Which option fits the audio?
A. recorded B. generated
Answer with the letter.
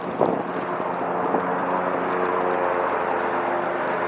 A